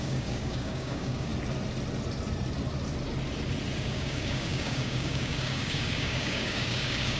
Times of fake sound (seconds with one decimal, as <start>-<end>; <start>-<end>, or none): 0.0-1.3; 3.8-7.2